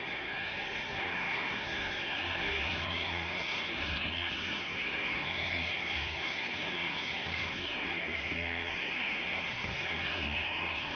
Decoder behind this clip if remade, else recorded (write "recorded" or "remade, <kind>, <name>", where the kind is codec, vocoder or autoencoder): remade, codec, SNAC